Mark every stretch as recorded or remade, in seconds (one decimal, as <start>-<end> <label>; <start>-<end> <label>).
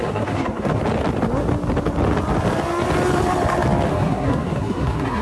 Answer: 0.0-0.8 remade; 0.8-3.9 recorded; 3.9-5.2 remade